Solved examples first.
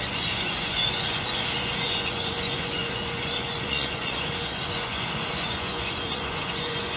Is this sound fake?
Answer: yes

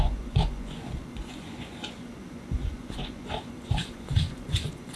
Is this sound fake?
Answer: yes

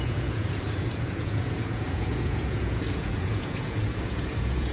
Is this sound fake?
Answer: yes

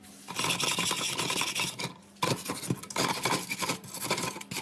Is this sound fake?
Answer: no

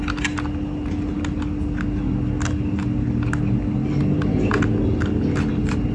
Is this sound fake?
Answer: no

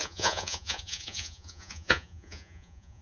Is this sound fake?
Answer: yes